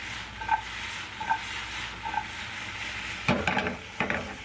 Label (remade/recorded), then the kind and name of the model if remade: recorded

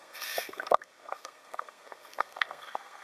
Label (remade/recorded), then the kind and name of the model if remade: remade, codec, SNAC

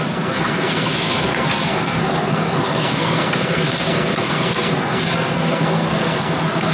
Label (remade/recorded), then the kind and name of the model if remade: remade, codec, SNAC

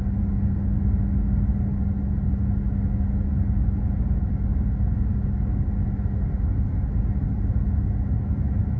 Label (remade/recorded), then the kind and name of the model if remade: recorded